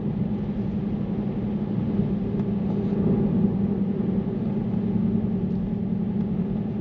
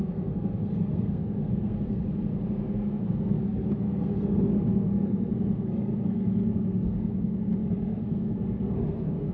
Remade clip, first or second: second